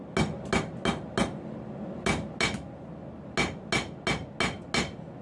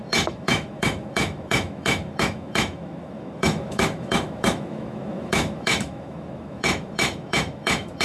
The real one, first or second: first